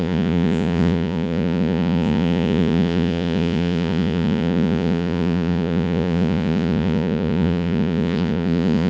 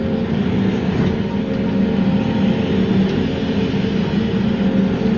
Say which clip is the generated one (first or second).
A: first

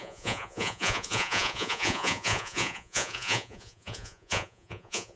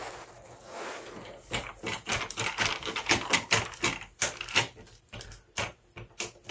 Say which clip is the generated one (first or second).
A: first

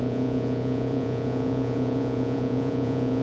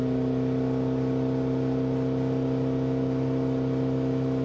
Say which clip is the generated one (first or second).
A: first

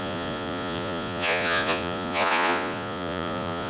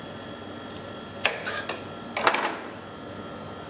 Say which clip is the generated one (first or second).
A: first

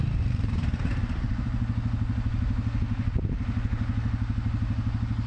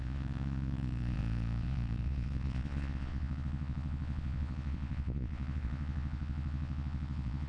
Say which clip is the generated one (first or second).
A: second